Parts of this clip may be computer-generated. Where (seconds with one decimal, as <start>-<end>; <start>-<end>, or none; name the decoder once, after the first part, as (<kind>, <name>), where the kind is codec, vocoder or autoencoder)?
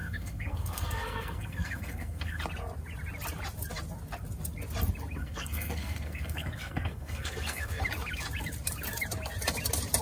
0.0-2.4 (codec, SNAC); 5.2-7.8